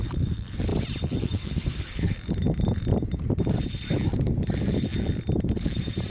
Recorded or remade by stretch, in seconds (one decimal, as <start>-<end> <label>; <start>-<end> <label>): 0.0-4.9 remade; 4.9-5.5 recorded; 5.5-6.1 remade